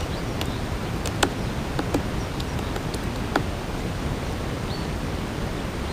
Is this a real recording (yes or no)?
yes